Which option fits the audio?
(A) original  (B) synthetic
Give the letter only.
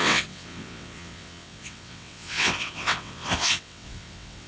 B